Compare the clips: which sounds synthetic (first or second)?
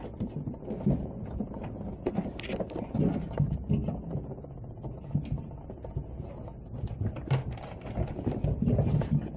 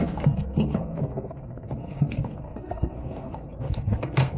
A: second